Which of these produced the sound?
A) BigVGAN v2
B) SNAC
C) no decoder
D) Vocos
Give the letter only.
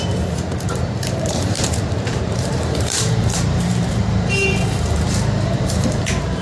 A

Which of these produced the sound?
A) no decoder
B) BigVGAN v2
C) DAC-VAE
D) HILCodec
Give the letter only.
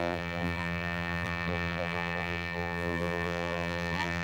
B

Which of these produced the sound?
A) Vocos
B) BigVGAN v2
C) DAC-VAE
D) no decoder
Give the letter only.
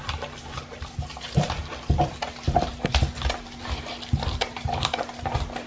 B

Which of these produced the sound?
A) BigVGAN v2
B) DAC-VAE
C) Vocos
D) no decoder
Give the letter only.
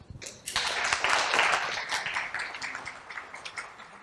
D